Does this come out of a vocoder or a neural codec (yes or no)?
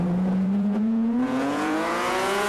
yes